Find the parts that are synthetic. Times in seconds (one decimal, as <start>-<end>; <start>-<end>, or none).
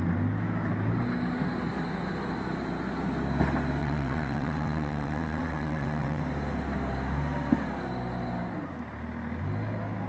3.8-6.2